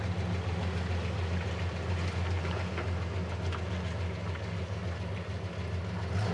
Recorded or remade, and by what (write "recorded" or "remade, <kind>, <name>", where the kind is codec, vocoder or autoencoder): recorded